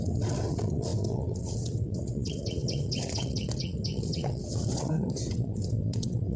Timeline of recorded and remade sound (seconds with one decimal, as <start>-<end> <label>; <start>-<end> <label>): 0.0-6.4 remade